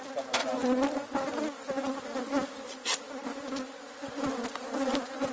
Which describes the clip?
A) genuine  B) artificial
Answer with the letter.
A